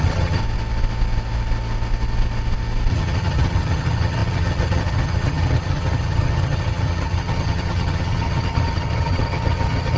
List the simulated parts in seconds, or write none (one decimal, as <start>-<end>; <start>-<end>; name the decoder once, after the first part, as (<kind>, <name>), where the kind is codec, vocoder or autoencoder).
0.0-0.4 (vocoder, HiFi-GAN); 2.9-10.0